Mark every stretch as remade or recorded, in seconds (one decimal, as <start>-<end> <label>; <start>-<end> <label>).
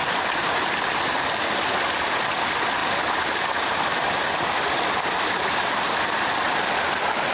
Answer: 0.0-0.8 remade; 0.8-7.3 recorded